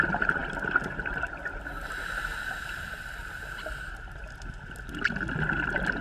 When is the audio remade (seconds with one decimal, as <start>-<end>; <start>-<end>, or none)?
none